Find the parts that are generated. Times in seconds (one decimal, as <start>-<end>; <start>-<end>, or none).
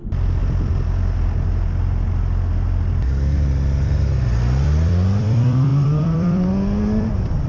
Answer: 0.0-0.4; 2.9-7.5